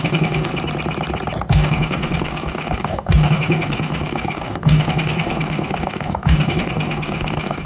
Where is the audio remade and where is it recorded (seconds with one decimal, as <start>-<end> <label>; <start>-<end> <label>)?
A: 0.0-0.5 remade; 0.5-1.5 recorded; 1.5-7.7 remade